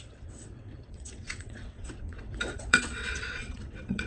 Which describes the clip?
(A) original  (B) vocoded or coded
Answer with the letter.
B